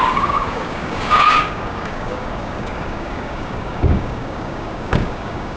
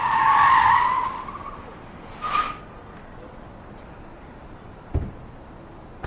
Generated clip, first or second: first